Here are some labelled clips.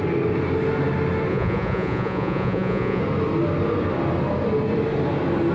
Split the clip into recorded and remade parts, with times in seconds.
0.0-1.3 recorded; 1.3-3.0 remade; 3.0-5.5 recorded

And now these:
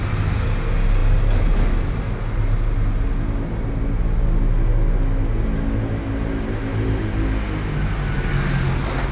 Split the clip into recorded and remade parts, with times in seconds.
0.0-9.1 recorded

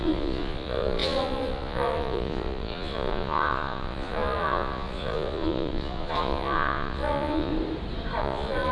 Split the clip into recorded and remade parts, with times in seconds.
0.0-7.5 remade; 7.5-8.2 recorded; 8.2-8.7 remade

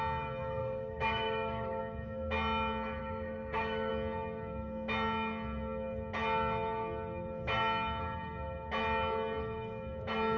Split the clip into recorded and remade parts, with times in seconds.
0.0-0.6 recorded; 0.6-1.8 remade; 1.8-3.0 recorded; 3.0-3.9 remade; 3.9-10.4 recorded

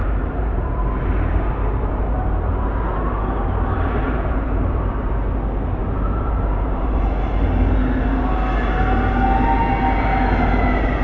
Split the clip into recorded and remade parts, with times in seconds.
0.0-5.1 remade; 5.1-5.8 recorded; 5.8-7.0 remade; 7.0-11.0 recorded

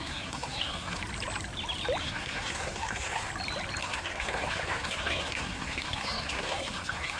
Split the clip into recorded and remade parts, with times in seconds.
0.0-1.0 remade; 1.0-2.0 recorded; 2.0-3.3 remade; 3.3-3.8 recorded; 3.8-7.2 remade

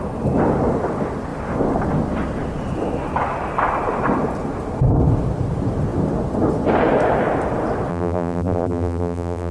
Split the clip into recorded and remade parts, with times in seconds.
0.0-7.9 recorded; 7.9-9.5 remade